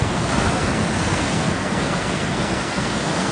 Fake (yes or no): yes